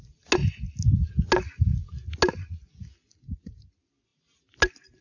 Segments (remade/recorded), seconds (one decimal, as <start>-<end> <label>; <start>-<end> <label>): 0.0-5.0 recorded